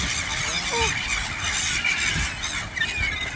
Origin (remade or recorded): recorded